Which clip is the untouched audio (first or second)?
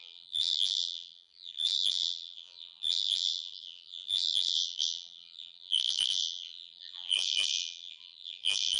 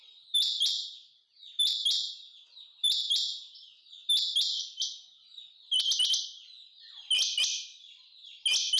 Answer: second